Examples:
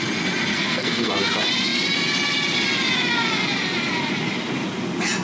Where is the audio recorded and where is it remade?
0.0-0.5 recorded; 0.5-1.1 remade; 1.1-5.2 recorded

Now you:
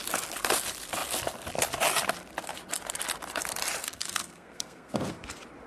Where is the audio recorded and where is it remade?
0.0-3.8 recorded; 3.8-5.1 remade; 5.1-5.7 recorded

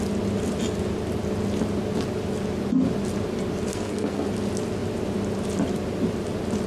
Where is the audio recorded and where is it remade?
0.0-3.7 recorded; 3.7-4.3 remade; 4.3-6.7 recorded

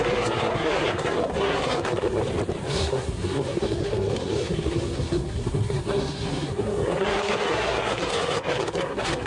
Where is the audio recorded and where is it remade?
0.0-2.2 remade; 2.2-2.7 recorded; 2.7-9.3 remade